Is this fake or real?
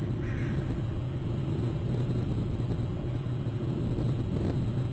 real